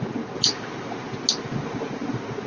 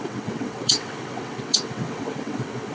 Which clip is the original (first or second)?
first